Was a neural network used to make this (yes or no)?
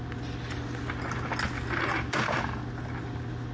no